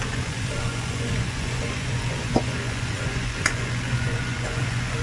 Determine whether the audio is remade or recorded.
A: remade